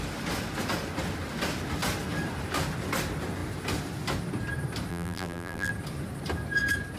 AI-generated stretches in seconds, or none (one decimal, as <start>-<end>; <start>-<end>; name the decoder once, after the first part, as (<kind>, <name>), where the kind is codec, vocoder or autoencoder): 4.9-5.7 (vocoder, BigVGAN v2)